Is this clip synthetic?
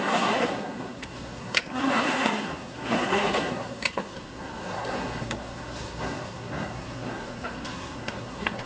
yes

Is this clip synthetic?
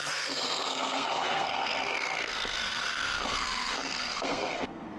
yes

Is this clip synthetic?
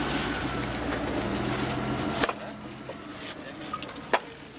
no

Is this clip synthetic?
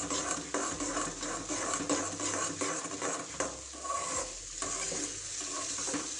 no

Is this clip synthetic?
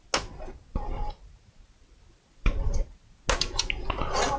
no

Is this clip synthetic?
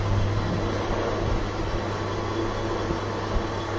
no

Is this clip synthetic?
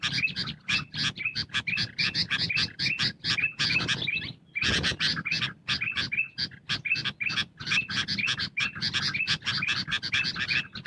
no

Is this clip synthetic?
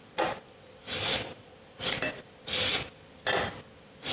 no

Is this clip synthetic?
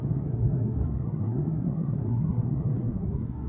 yes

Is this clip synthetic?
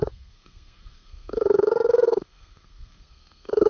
yes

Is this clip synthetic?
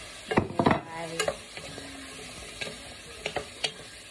no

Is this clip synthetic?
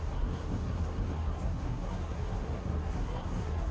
yes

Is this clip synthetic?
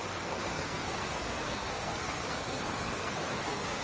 yes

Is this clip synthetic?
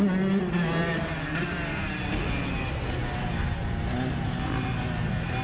no